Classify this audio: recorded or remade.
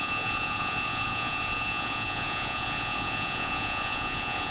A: remade